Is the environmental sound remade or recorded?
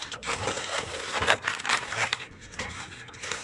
remade